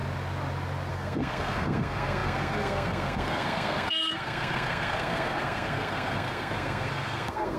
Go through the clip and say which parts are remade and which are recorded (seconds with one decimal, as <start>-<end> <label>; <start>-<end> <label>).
0.0-0.9 recorded; 0.9-7.6 remade